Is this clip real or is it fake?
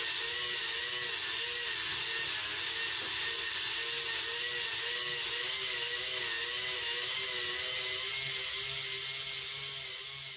real